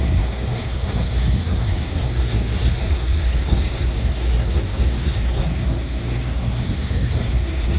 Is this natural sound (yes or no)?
no